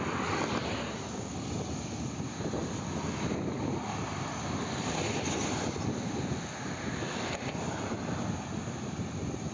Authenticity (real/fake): real